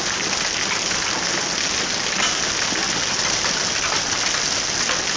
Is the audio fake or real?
real